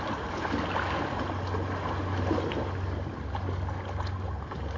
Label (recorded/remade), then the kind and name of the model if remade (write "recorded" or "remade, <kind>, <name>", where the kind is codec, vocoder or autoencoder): recorded